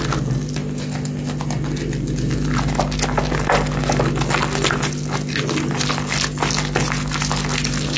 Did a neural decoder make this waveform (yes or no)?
no